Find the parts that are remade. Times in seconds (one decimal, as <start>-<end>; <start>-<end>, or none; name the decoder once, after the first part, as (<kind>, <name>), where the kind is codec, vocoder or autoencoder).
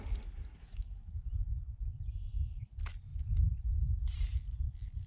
0.6-1.3 (autoencoder, DAC-VAE)